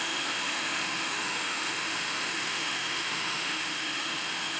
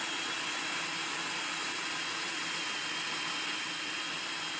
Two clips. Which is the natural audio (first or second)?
second